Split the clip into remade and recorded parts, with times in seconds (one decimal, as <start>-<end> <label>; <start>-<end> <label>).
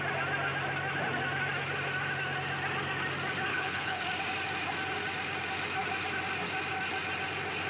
0.0-3.5 recorded; 3.5-4.0 remade; 4.0-7.7 recorded